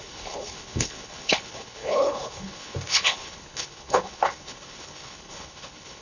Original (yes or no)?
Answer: no